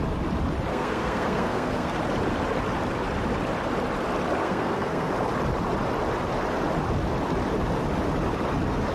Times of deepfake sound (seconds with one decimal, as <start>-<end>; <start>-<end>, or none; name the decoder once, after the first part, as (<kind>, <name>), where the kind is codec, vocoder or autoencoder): 0.7-2.0 (codec, SNAC); 4.4-5.1